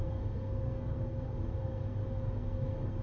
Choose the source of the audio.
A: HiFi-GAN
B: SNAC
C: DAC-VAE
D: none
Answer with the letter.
B